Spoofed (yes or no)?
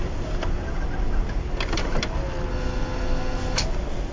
no